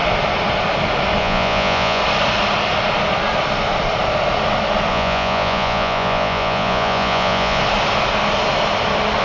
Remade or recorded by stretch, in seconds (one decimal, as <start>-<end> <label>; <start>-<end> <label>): 0.0-1.2 recorded; 1.2-2.0 remade; 2.0-4.9 recorded; 4.9-7.6 remade; 7.6-9.2 recorded